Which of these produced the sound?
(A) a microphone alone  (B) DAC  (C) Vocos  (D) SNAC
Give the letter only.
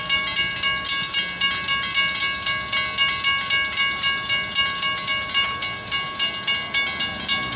A